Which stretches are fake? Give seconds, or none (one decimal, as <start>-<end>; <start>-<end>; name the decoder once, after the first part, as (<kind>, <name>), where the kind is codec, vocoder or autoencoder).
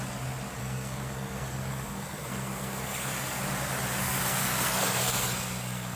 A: 0.6-3.4 (codec, SNAC); 4.0-6.0